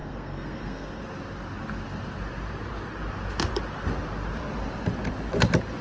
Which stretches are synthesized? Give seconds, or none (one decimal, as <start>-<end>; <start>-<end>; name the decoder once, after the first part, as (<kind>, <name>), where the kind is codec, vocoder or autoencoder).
0.0-1.0 (codec, SNAC)